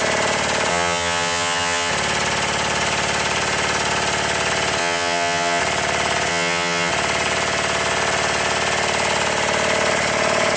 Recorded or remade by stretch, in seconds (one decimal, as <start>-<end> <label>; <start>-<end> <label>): 0.0-0.7 recorded; 0.7-1.9 remade; 1.9-4.8 recorded; 4.8-5.6 remade; 5.6-6.3 recorded; 6.3-6.9 remade; 6.9-10.6 recorded